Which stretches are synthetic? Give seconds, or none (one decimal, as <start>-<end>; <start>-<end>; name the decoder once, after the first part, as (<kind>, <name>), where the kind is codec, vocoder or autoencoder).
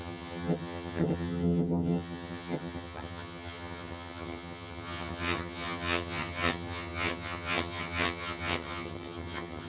0.0-9.7 (vocoder, HiFi-GAN)